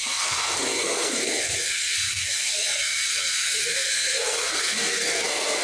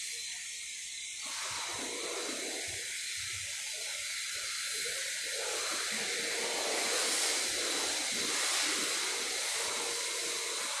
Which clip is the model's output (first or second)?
first